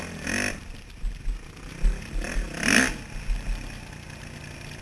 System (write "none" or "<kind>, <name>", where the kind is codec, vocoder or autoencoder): none